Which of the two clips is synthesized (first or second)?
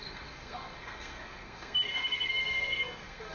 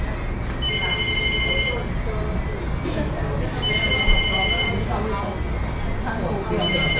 first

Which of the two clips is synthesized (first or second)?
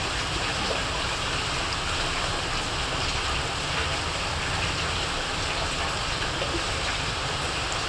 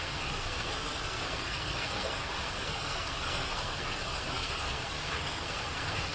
second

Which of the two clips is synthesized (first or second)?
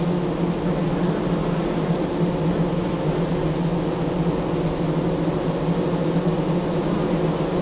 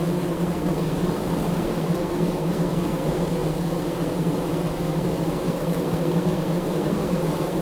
second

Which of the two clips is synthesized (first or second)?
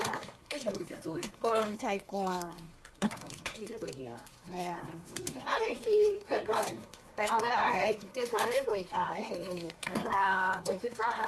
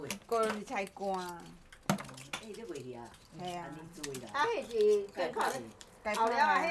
first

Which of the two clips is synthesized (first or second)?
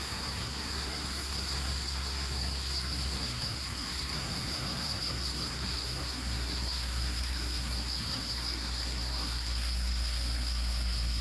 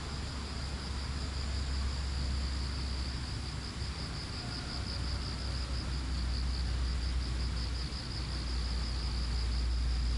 first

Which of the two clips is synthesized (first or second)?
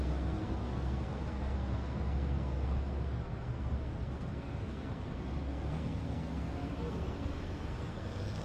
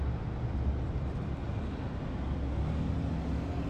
first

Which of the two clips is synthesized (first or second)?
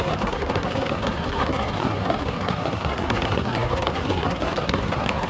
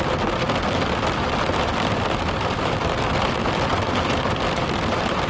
first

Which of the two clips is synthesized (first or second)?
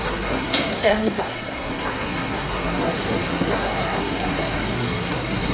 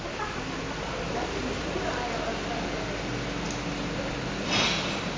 first